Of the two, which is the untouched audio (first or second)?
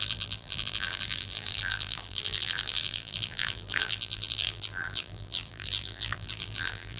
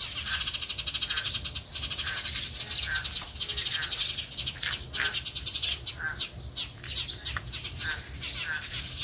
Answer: second